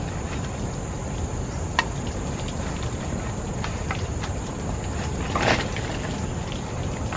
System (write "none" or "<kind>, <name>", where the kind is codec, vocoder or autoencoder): none